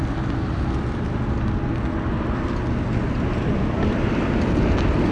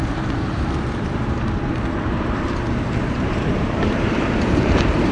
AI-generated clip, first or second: second